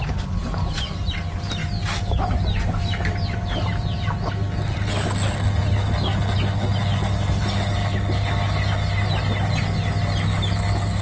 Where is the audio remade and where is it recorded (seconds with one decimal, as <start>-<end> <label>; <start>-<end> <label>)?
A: 0.0-0.4 recorded; 0.4-1.1 remade; 1.1-1.6 recorded; 1.6-4.3 remade; 4.3-11.0 recorded